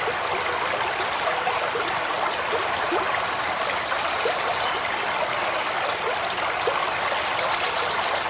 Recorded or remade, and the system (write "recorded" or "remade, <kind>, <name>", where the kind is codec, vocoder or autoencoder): recorded